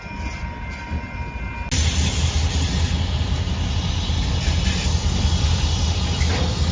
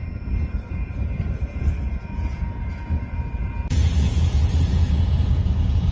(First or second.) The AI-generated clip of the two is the second